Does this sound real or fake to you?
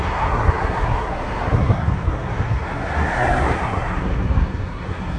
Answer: fake